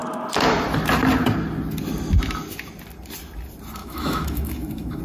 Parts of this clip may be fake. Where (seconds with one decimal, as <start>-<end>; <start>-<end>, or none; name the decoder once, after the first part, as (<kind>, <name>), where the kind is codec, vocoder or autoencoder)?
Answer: 3.8-5.0 (autoencoder, DAC-VAE)